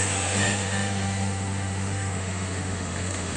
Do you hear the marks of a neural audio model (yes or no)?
yes